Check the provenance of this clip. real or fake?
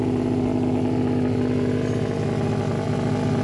real